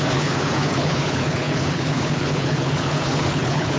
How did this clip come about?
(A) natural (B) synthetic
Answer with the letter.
B